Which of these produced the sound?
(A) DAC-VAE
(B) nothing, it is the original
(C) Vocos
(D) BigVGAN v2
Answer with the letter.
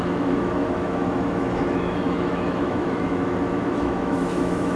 A